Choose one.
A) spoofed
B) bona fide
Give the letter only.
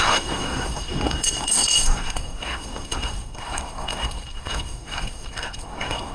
A